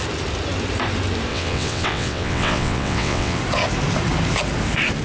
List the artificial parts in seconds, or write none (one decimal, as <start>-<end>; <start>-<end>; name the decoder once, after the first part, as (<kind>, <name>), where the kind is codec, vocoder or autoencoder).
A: 1.3-3.4 (vocoder, WaveNeXt)